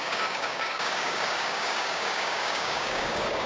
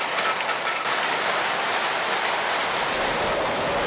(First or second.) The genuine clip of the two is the second